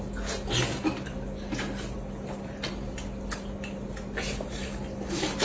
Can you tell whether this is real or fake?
real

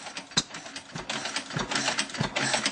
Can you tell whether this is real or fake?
real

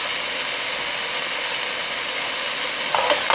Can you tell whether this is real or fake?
real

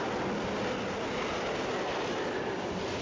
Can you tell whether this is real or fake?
real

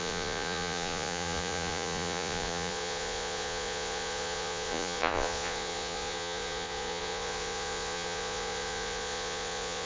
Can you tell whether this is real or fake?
fake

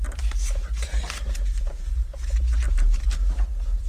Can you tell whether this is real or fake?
fake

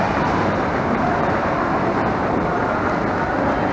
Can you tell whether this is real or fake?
real